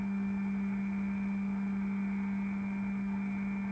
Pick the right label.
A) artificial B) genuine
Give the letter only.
B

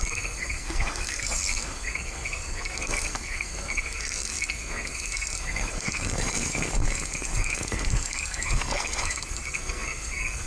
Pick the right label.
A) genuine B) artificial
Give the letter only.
B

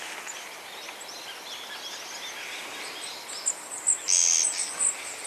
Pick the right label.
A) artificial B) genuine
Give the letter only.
B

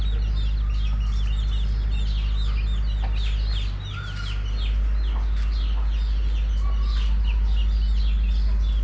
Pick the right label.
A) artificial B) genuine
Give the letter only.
B